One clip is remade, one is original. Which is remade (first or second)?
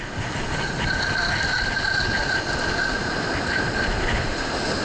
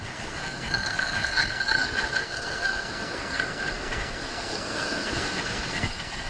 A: second